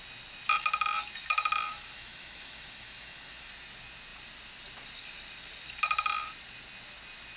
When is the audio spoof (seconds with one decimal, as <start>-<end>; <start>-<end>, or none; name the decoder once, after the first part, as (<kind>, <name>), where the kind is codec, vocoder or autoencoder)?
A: 1.7-3.5 (autoencoder, DAC-VAE)